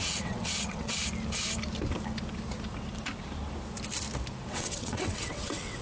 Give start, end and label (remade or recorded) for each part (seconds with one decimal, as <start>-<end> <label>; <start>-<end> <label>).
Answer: 0.0-1.0 remade; 1.0-4.5 recorded; 4.5-5.8 remade